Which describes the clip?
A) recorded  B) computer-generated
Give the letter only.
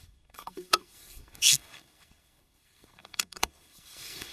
B